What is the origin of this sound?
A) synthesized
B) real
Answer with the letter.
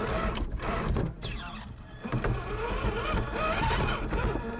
B